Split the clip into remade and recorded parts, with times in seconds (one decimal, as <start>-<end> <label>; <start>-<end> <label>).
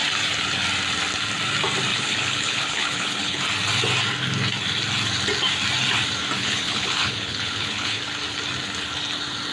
0.0-1.9 recorded; 1.9-3.4 remade; 3.4-6.4 recorded; 6.4-8.0 remade; 8.0-9.5 recorded